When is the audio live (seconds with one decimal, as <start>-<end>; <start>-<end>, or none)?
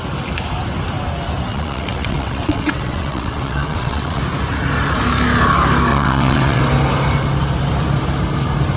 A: 0.0-1.5; 4.2-5.9; 6.6-8.8